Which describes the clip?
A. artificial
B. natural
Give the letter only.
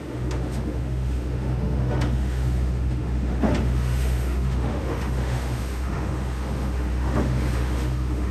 A